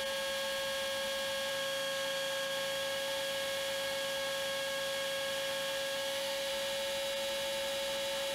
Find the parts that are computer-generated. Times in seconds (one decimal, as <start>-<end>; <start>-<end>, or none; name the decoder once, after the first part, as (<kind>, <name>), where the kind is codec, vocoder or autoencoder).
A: 1.5-6.5 (autoencoder, DAC-VAE)

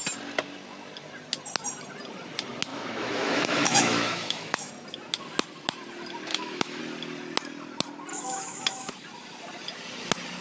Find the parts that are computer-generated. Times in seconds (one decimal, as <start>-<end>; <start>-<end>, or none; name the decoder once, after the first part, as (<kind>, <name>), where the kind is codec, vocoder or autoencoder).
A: 2.7-4.7 (autoencoder, DAC-VAE); 6.3-6.8; 8.1-8.9